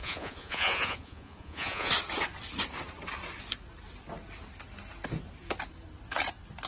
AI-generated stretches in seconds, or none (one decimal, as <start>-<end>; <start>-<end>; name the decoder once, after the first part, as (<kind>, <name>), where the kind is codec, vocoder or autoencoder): 0.0-1.9 (vocoder, Vocos)